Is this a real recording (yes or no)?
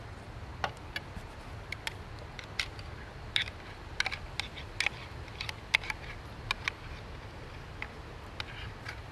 yes